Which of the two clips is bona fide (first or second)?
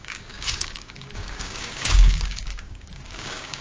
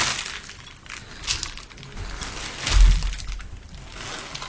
second